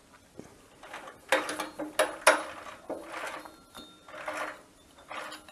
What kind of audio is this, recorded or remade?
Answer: recorded